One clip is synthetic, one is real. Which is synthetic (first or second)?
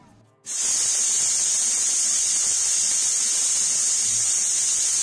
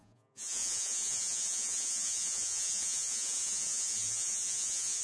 second